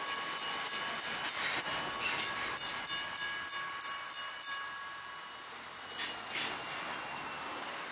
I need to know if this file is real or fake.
real